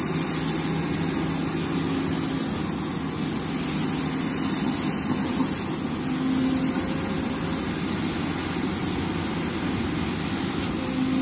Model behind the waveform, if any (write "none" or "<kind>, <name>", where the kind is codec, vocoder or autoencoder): none